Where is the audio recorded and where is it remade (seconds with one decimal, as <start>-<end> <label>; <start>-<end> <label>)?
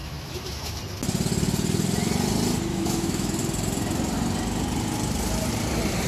0.0-0.8 remade; 0.8-2.7 recorded; 2.7-3.4 remade; 3.4-6.1 recorded